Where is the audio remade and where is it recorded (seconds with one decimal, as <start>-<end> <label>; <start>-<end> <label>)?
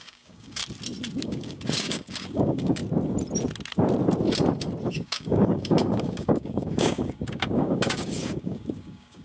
0.0-0.6 remade; 0.6-1.2 recorded; 1.2-2.8 remade; 2.8-4.9 recorded; 4.9-9.2 remade